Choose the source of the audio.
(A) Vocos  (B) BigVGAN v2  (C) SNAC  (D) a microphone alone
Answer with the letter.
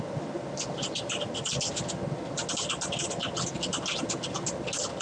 D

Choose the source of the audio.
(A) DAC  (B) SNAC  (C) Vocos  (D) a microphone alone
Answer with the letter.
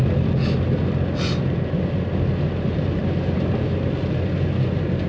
D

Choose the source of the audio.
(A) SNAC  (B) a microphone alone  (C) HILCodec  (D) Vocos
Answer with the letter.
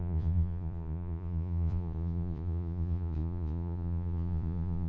D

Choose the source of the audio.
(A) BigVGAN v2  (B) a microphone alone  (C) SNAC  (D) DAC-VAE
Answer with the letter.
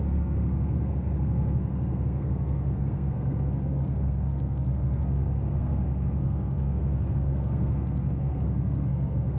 C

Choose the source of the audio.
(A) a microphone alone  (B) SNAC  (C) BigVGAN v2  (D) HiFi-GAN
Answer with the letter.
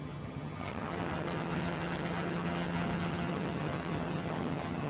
D